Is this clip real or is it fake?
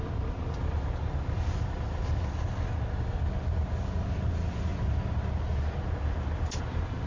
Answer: real